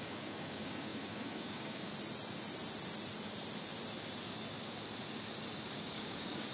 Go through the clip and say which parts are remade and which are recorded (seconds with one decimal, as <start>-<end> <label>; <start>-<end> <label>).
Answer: 0.0-1.9 remade; 1.9-5.7 recorded; 5.7-6.5 remade